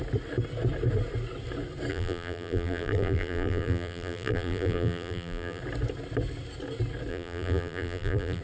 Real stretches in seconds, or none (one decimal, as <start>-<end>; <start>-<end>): 0.0-1.9; 5.6-7.1